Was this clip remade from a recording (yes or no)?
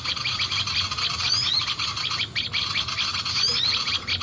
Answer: no